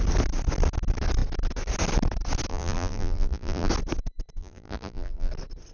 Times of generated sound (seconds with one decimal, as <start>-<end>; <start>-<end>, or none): 2.5-3.7; 4.4-5.3